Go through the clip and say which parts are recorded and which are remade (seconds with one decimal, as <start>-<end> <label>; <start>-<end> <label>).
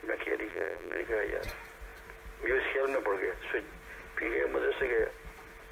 0.0-0.5 recorded; 0.5-1.0 remade; 1.0-5.7 recorded